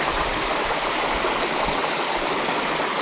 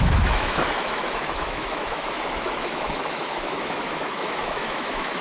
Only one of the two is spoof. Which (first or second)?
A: second